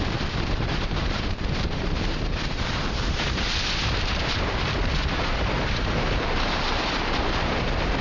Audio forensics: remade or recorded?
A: remade